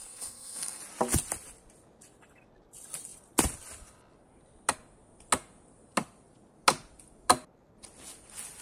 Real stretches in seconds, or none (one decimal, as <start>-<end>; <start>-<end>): 0.8-8.6